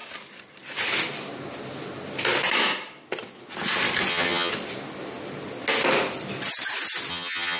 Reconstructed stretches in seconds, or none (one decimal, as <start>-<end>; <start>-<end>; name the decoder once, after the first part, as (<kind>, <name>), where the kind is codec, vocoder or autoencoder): 4.1-4.5 (vocoder, HiFi-GAN); 7.1-7.6